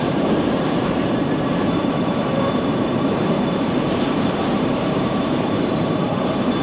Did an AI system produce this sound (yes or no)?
yes